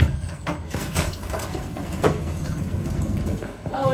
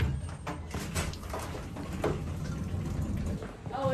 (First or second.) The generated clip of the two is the first